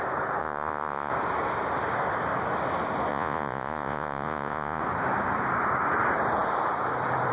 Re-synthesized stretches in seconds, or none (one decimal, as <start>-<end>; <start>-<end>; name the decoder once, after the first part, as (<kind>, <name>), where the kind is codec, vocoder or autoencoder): 0.4-1.1 (vocoder, Vocos); 3.1-4.8